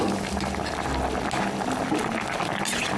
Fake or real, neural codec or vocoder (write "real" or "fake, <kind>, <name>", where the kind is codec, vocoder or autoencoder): real